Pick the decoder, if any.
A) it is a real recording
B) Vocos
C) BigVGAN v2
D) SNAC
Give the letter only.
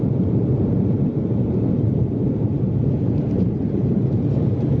C